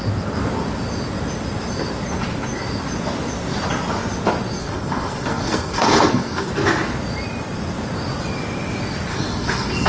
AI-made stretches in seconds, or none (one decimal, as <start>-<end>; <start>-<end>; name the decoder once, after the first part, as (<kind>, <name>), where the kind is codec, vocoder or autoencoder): 4.6-6.5 (codec, SNAC); 9.1-9.9